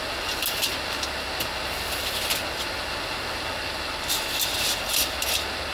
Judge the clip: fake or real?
real